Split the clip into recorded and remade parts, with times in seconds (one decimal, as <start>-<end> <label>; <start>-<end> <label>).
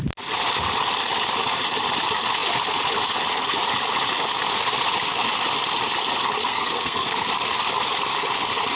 0.0-6.4 recorded; 6.4-7.3 remade; 7.3-8.8 recorded